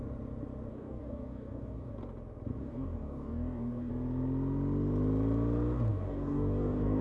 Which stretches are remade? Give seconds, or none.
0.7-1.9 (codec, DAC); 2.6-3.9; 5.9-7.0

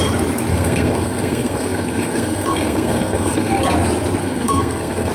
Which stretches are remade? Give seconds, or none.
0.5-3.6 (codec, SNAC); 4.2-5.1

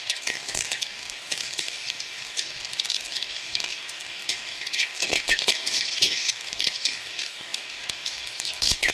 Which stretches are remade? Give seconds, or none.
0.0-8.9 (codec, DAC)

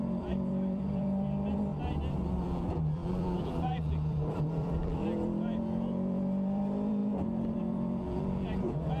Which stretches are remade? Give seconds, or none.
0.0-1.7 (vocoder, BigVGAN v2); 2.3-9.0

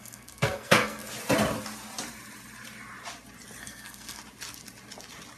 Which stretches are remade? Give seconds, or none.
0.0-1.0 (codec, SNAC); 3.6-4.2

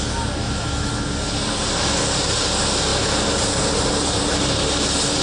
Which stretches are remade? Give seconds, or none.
0.4-0.9 (autoencoder, DAC-VAE)

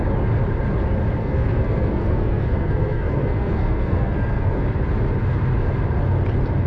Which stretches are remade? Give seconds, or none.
1.2-4.6 (codec, SNAC)

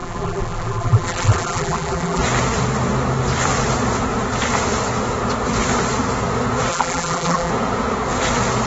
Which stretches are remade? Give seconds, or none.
0.0-2.2 (vocoder, BigVGAN v2); 6.7-7.5